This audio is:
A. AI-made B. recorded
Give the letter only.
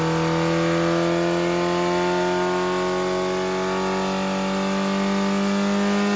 B